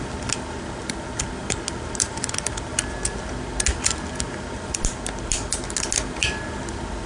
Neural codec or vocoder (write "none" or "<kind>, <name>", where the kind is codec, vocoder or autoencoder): none